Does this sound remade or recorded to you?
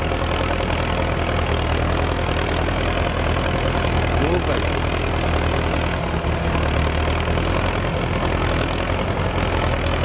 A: recorded